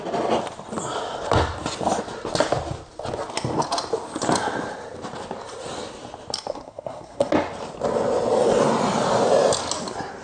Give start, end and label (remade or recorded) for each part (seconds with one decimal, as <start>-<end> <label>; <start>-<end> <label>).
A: 0.0-6.5 recorded; 6.5-7.3 remade; 7.3-10.2 recorded